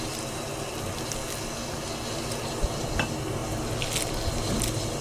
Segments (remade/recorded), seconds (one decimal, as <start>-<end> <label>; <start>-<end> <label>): 0.0-5.0 recorded